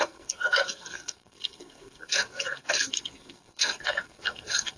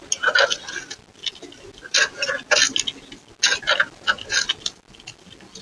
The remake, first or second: first